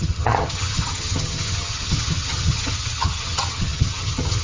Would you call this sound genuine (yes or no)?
no